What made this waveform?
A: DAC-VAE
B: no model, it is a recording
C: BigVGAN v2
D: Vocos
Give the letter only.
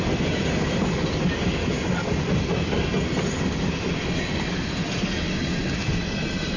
B